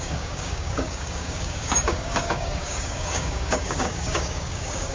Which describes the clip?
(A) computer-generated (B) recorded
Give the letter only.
A